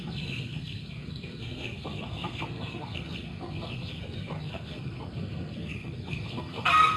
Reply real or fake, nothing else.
fake